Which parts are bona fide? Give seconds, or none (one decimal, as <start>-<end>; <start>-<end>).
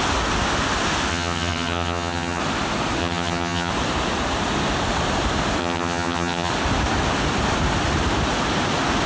0.0-1.1; 2.4-3.0; 3.7-5.6; 6.5-9.1